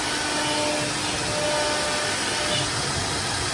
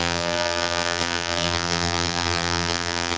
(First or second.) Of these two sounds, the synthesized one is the second